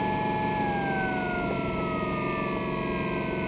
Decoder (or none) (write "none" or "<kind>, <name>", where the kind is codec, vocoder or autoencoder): none